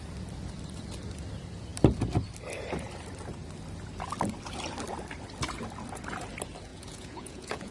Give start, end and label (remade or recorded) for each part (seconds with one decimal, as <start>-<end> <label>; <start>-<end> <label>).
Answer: 0.0-6.7 recorded; 6.7-7.7 remade